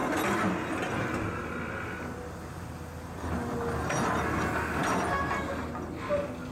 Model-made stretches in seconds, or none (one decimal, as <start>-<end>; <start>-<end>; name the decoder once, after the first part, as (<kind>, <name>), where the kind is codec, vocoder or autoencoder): none

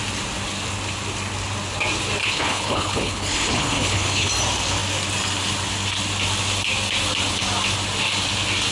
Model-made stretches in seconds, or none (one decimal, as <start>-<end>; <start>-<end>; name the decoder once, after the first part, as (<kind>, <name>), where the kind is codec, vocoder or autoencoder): 2.2-4.3 (codec, HILCodec)

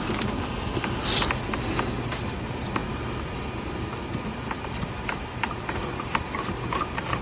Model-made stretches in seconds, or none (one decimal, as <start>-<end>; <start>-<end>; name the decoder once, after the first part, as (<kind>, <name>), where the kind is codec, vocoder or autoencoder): none

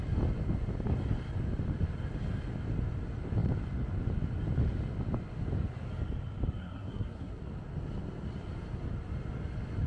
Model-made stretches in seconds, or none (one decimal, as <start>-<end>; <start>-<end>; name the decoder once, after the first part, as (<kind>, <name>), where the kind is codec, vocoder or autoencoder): 6.6-7.4 (codec, SNAC)